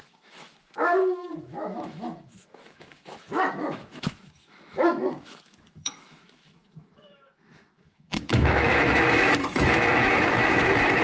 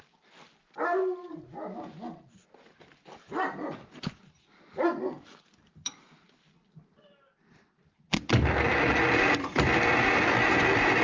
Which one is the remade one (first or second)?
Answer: first